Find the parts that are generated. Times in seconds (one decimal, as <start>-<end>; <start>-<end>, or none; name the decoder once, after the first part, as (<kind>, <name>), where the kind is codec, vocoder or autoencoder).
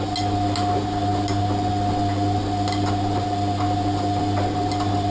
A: none